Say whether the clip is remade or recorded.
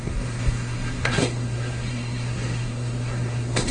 remade